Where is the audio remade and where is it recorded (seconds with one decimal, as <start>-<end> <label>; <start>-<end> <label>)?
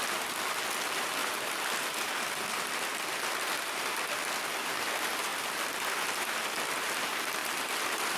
0.0-1.2 recorded; 1.2-2.1 remade; 2.1-7.4 recorded; 7.4-8.2 remade